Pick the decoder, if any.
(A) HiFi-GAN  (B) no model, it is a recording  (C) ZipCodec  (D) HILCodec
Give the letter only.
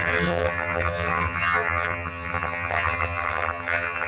A